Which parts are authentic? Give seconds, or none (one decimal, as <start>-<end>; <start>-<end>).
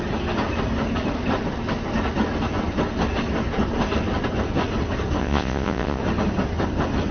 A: 0.0-5.2; 6.0-7.1